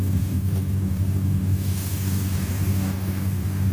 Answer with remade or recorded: remade